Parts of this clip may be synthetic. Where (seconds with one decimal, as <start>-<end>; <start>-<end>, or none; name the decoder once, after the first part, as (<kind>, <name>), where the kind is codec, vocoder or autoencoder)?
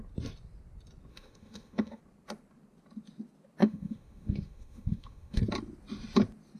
1.1-2.0 (autoencoder, DAC-VAE); 3.6-5.4